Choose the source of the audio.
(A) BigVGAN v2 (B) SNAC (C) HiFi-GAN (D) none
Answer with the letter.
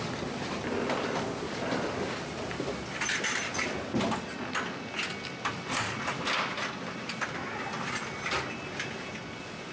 D